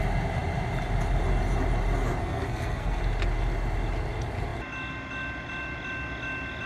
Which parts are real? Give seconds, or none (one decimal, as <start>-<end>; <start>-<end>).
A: 0.0-2.2; 3.0-6.7